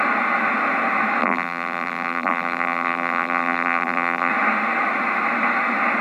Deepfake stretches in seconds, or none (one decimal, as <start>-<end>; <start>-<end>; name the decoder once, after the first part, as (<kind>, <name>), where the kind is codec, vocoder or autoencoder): 1.2-4.3 (vocoder, BigVGAN v2)